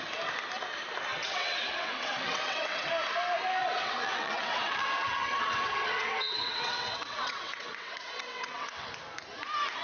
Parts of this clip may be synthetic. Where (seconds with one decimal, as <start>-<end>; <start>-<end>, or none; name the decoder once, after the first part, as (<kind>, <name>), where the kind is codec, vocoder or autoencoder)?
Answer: 1.1-2.9 (vocoder, WaveNeXt); 3.6-8.9